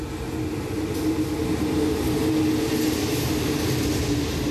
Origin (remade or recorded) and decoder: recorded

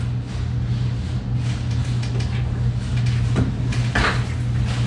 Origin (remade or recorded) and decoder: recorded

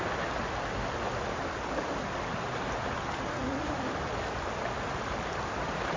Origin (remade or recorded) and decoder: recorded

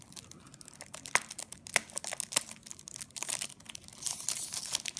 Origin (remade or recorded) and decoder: recorded